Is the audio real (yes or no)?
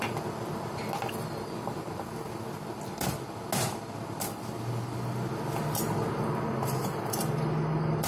yes